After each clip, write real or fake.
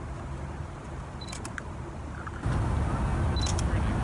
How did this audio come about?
real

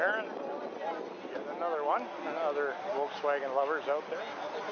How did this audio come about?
real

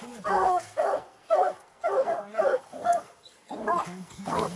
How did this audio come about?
fake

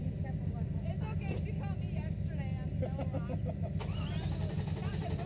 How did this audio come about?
real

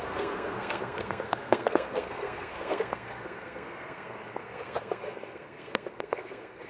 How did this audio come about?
fake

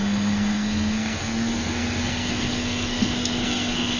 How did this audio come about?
fake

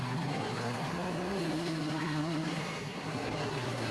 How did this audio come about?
fake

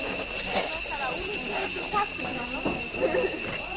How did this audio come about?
real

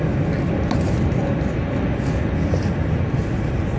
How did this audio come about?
real